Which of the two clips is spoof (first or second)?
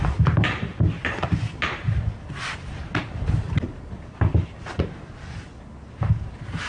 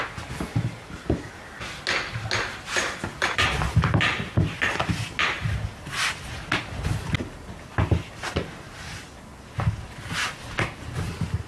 first